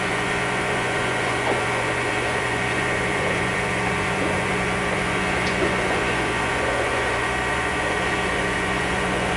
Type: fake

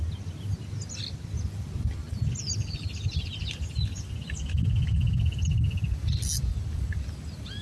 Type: real